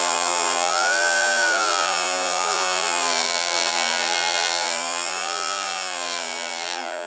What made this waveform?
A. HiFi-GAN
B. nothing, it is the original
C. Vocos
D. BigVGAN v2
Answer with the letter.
D